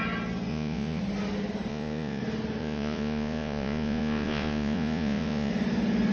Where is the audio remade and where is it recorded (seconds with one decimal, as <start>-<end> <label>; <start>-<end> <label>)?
0.0-0.5 recorded; 0.5-1.0 remade; 1.0-1.7 recorded; 1.7-2.2 remade; 2.2-2.6 recorded; 2.6-5.5 remade; 5.5-6.1 recorded